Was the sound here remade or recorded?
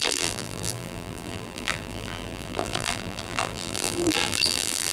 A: remade